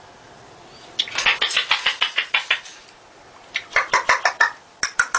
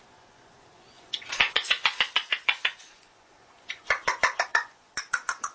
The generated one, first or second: second